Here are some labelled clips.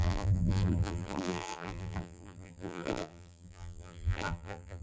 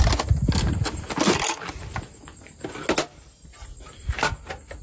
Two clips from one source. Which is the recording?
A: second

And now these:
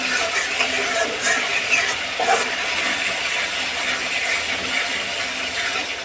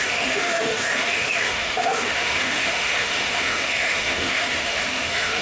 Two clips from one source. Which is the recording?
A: first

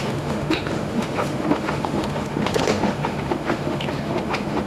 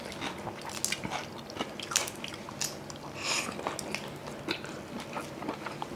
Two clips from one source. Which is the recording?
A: second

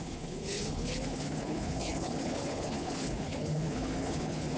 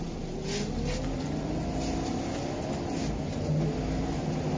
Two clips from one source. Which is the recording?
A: second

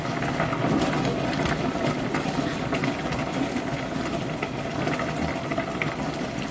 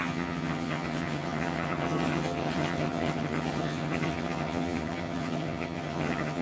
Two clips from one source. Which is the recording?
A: first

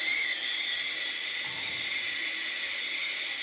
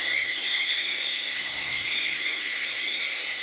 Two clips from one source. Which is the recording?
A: first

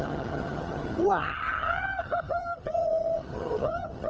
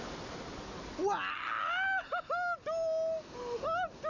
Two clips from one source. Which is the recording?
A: second